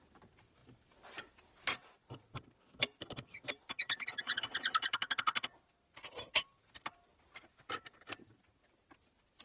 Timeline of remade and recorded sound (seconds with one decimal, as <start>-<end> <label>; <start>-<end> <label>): 0.0-0.6 recorded; 0.6-1.3 remade; 1.3-9.4 recorded